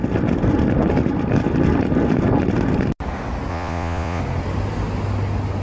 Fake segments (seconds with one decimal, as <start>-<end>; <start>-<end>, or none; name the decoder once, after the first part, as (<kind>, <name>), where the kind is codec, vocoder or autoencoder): 3.5-4.2 (vocoder, Vocos)